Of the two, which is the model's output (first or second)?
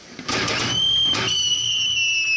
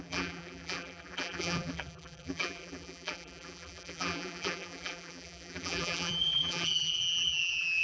second